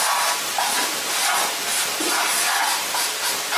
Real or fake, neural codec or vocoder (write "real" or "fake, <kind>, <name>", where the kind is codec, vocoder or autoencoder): real